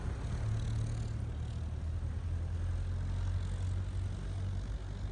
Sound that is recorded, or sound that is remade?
recorded